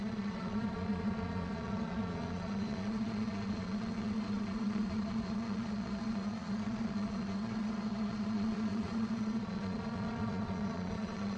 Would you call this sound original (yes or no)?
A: no